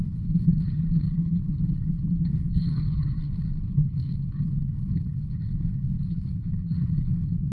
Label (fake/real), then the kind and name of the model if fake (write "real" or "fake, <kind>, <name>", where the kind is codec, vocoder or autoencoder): fake, codec, HILCodec